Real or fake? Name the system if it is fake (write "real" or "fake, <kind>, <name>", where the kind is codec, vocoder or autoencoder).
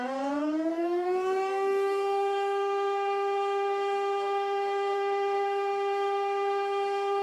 fake, codec, DAC